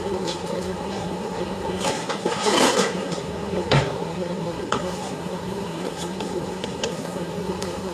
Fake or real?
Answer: fake